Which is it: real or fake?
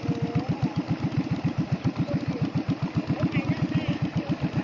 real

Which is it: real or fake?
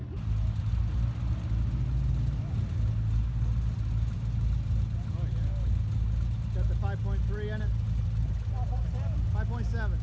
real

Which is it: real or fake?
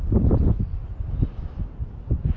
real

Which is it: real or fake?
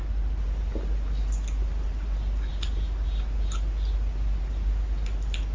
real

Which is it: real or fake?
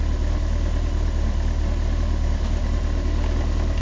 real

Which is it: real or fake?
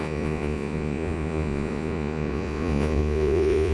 fake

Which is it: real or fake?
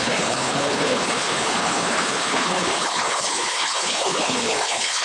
fake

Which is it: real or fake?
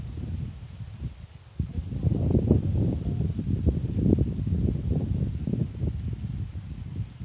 real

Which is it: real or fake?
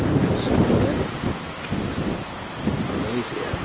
real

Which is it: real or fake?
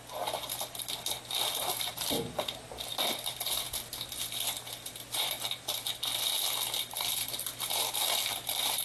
real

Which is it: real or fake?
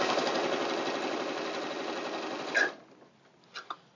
real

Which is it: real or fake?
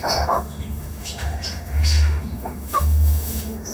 fake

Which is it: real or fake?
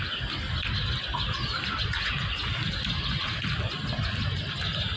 real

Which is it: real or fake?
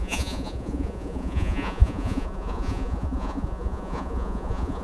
fake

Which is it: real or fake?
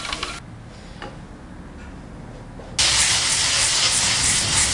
real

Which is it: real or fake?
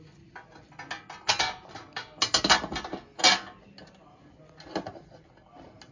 real